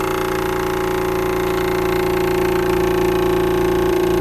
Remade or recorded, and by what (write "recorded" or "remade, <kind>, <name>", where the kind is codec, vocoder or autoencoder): recorded